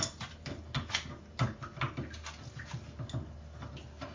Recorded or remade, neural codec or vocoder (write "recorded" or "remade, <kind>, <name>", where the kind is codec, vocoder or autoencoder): recorded